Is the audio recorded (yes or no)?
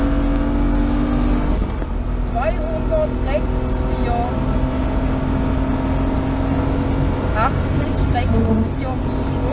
yes